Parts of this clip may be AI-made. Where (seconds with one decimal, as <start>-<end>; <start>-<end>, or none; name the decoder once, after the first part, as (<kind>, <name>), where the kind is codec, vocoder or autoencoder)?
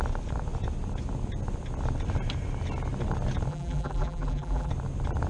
3.5-4.7 (vocoder, BigVGAN v2)